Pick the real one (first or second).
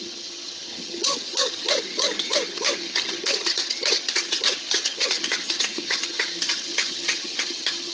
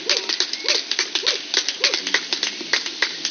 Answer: second